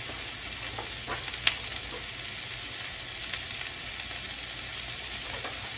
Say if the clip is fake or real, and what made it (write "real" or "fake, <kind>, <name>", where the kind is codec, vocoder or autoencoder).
real